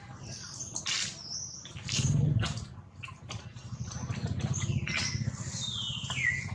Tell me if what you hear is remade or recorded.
recorded